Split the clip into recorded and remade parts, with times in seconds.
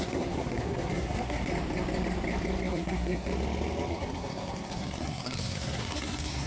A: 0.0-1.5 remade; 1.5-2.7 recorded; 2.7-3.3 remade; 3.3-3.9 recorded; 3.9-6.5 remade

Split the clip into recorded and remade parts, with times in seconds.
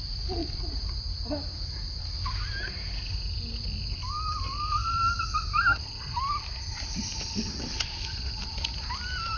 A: 0.0-0.4 recorded; 0.4-1.0 remade; 1.0-9.4 recorded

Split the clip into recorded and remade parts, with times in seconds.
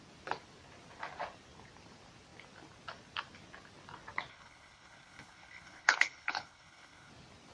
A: 0.0-4.3 recorded; 4.3-7.1 remade; 7.1-7.5 recorded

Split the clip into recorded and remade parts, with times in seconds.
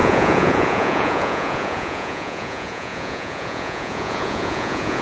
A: 0.0-5.0 remade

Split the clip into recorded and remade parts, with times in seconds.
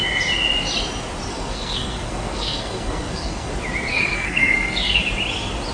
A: 0.0-1.3 recorded; 1.3-3.5 remade; 3.5-3.9 recorded; 3.9-5.0 remade; 5.0-5.7 recorded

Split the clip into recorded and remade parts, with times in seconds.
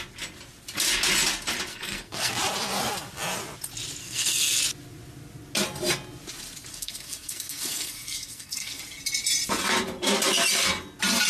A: 0.0-1.7 recorded; 1.7-2.3 remade; 2.3-4.0 recorded; 4.0-4.6 remade; 4.6-6.7 recorded; 6.7-8.8 remade; 8.8-11.3 recorded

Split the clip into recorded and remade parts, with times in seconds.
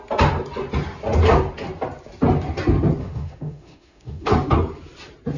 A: 0.0-3.0 recorded; 3.0-4.3 remade; 4.3-5.4 recorded